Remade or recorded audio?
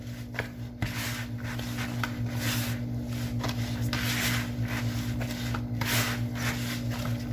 recorded